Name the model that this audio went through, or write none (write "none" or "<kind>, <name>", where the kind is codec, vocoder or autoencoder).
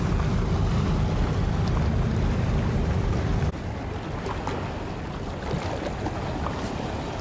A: none